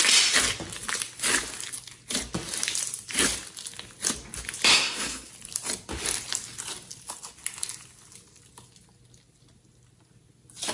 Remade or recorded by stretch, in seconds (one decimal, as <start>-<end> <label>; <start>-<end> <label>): 0.0-4.7 recorded; 4.7-5.3 remade; 5.3-10.7 recorded